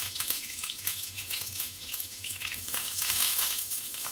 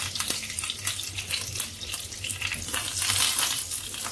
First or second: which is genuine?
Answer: second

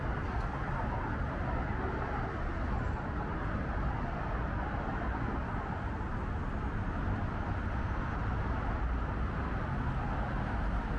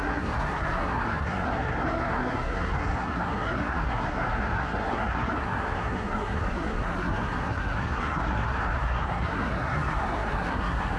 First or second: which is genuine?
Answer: first